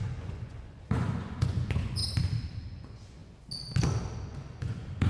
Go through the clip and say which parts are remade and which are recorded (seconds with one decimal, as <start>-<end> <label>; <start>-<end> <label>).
0.0-2.0 remade; 2.0-2.7 recorded; 2.7-3.2 remade; 3.2-4.2 recorded; 4.2-5.1 remade